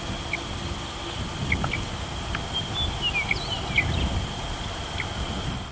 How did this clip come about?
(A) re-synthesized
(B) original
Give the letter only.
B